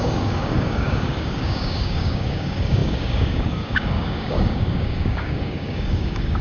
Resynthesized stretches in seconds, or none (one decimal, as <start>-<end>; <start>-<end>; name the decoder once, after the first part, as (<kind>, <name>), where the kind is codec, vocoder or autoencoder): 0.0-6.4 (codec, DAC)